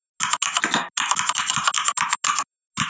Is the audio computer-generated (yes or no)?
no